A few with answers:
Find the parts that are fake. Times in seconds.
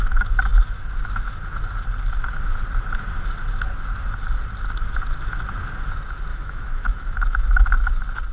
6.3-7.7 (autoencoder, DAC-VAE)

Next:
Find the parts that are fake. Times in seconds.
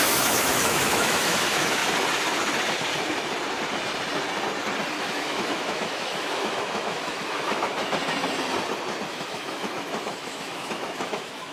0.0-1.8 (autoencoder, DAC-VAE); 5.0-8.0; 9.1-11.5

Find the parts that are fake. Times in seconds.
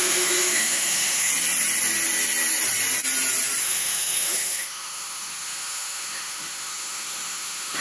0.0-1.3 (autoencoder, DAC-VAE); 3.6-7.8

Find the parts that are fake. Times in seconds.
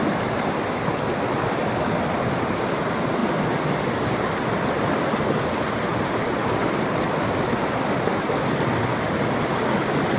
none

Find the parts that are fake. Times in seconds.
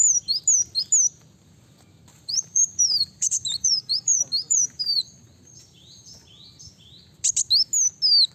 2.1-6.7 (vocoder, BigVGAN v2)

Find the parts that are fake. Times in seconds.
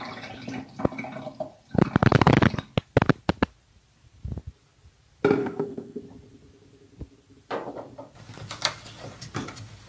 5.4-6.0 (codec, SNAC)